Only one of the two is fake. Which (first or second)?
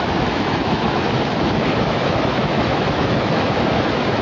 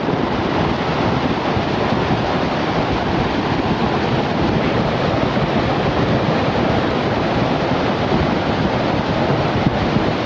first